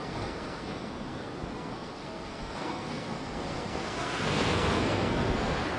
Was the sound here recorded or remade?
remade